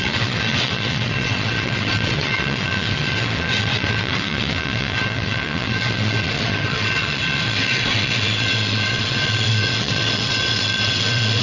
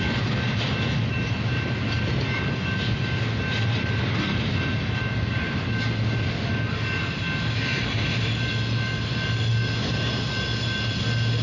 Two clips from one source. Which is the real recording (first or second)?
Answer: second